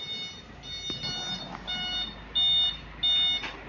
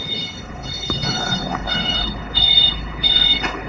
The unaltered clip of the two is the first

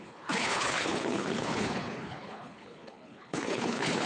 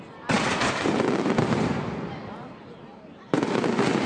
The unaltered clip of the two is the second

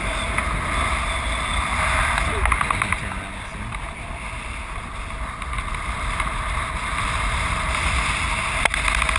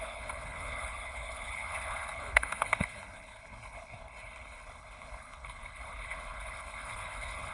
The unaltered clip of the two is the first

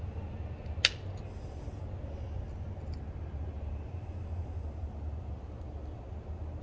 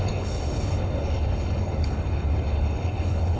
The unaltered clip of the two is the first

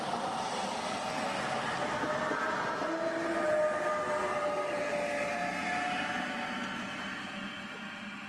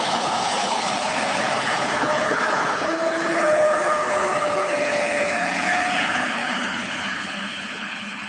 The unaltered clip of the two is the first